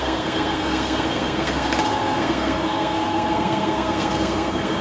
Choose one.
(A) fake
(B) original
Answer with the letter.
A